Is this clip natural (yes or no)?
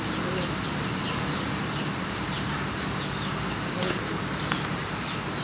no